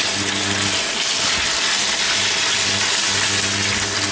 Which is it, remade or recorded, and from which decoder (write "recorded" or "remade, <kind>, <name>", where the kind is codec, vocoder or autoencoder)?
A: recorded